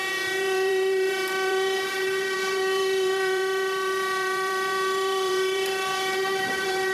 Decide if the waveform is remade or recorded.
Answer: remade